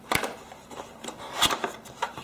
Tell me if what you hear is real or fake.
fake